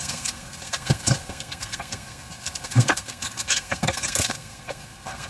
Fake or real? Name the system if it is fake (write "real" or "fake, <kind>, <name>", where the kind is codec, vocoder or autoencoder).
fake, codec, SNAC